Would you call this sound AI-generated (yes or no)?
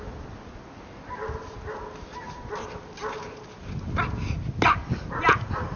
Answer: no